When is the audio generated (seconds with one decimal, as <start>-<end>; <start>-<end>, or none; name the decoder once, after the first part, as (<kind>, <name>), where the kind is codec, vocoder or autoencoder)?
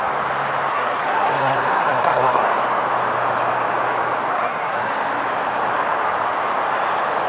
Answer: 0.7-2.4 (codec, SNAC); 4.3-4.9